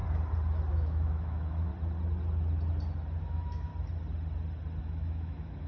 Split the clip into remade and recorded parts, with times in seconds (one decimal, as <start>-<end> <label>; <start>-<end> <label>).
0.0-0.7 recorded; 0.7-1.7 remade; 1.7-3.2 recorded; 3.2-3.7 remade; 3.7-4.8 recorded; 4.8-5.7 remade